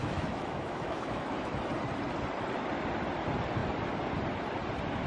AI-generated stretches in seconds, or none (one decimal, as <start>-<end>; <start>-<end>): 0.0-1.7